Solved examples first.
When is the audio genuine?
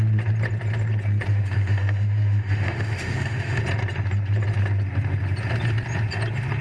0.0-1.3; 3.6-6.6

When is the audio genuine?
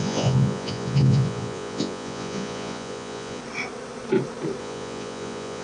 3.4-4.6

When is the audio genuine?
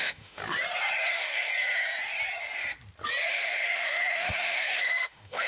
0.4-1.1; 1.5-3.3